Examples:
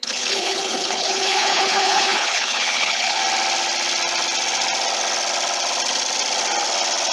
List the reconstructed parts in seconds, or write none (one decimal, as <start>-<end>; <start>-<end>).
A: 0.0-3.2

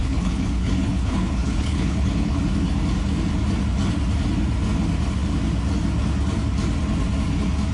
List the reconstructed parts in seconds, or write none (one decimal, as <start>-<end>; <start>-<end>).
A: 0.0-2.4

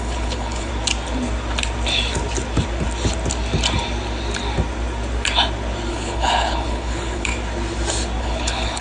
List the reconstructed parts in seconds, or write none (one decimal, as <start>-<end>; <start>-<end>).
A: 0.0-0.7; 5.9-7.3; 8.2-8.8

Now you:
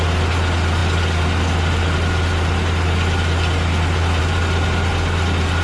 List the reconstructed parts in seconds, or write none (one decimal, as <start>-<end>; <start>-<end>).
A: none

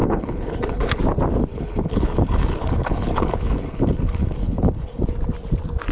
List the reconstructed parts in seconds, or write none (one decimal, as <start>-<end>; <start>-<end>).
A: 0.0-1.0; 1.5-5.0